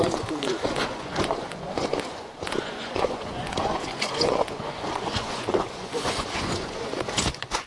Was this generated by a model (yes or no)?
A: yes